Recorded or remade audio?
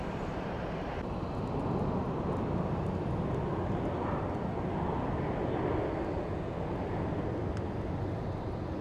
recorded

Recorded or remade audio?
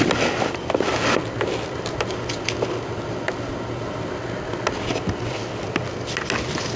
recorded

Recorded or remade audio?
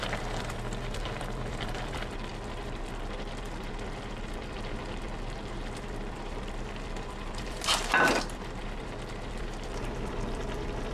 remade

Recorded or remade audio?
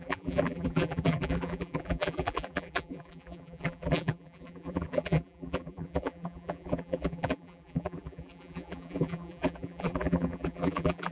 remade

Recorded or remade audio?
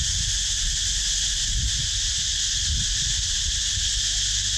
recorded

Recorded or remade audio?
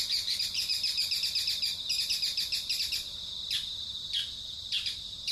recorded